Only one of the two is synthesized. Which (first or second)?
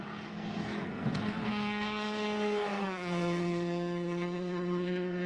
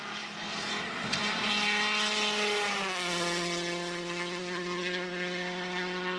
first